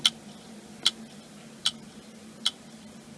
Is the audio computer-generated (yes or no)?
no